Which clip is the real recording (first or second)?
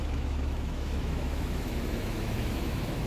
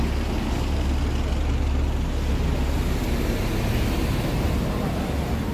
second